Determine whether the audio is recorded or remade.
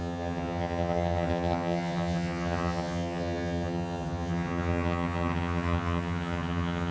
remade